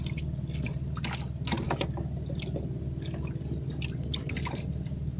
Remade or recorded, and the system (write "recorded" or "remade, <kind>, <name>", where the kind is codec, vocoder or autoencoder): recorded